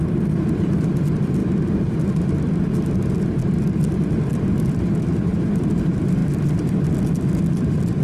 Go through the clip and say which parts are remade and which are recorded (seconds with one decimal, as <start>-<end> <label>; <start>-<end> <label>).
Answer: 0.0-1.4 remade; 1.4-3.8 recorded; 3.8-6.2 remade; 6.2-6.9 recorded; 6.9-8.0 remade